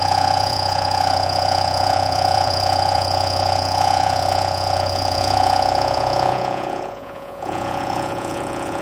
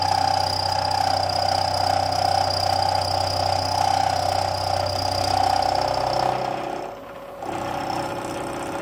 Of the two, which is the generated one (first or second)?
first